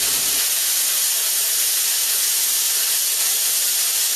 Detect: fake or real real